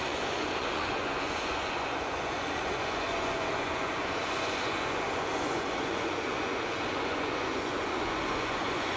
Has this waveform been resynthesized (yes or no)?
yes